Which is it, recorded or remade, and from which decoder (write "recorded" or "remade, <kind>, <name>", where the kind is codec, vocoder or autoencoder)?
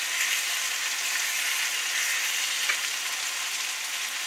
recorded